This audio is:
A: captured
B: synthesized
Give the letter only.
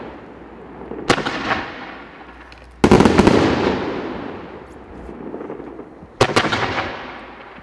A